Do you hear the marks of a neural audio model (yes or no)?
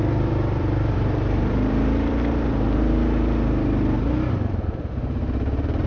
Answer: yes